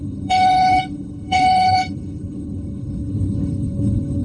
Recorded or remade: remade